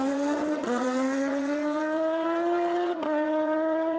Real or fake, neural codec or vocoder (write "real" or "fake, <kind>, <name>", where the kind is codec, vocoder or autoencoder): fake, vocoder, WaveNeXt